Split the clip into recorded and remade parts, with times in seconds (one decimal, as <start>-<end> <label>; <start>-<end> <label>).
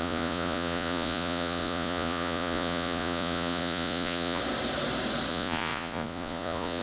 0.0-4.4 remade; 4.4-5.3 recorded; 5.3-6.8 remade